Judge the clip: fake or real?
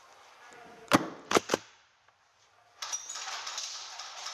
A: real